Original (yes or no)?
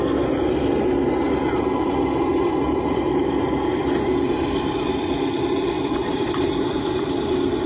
yes